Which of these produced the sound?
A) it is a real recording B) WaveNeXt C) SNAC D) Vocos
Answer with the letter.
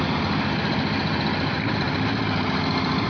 A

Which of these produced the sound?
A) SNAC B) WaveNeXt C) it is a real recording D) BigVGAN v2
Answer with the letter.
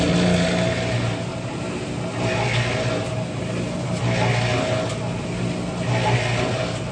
C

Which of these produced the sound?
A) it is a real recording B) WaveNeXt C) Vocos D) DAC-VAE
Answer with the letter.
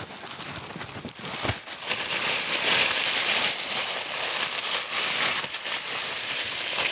A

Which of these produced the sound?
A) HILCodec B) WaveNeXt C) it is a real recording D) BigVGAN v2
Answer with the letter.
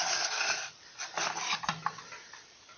C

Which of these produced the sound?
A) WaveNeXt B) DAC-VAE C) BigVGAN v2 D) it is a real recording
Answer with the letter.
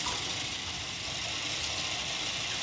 D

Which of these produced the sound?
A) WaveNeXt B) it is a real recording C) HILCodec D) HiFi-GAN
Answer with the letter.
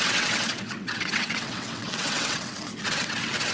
A